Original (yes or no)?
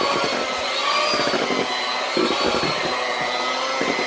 yes